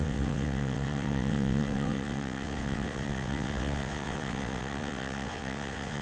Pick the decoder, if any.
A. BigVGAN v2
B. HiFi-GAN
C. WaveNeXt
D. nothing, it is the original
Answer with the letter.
C